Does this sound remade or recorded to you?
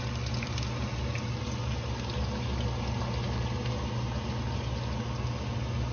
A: recorded